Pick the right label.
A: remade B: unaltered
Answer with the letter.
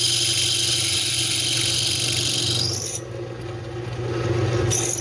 B